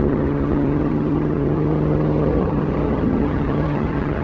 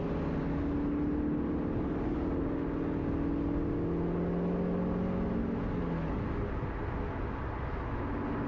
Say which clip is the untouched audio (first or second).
second